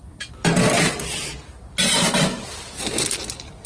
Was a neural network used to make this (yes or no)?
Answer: no